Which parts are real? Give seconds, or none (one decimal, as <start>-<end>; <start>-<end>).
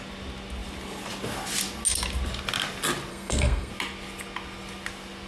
0.0-3.1; 3.7-5.3